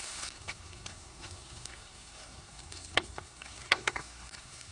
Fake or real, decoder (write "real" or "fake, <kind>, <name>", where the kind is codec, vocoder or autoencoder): fake, codec, SNAC